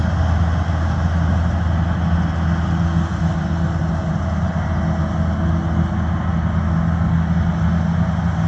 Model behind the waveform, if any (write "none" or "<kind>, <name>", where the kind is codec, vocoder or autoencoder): none